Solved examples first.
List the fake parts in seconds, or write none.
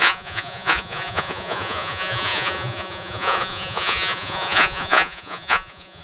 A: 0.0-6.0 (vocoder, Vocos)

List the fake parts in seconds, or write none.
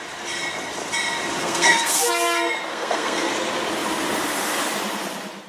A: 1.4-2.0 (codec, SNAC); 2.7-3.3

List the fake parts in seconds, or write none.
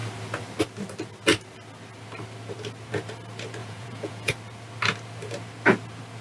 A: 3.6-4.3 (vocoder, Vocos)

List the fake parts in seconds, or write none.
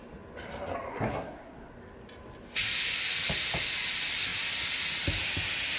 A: 0.9-1.7 (codec, SNAC)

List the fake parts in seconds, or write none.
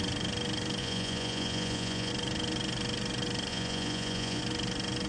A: 0.8-2.1 (vocoder, Vocos); 3.5-4.4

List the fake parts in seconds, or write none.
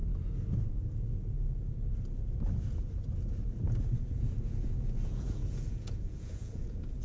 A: 4.2-7.0 (vocoder, Vocos)